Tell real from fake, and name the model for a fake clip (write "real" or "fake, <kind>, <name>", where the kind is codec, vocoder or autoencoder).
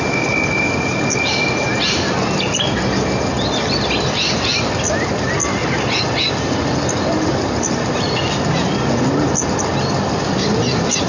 real